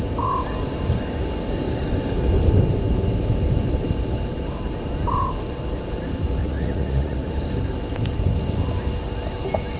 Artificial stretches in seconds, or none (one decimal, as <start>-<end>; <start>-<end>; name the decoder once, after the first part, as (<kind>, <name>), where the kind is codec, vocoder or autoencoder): 6.4-7.4 (vocoder, Vocos)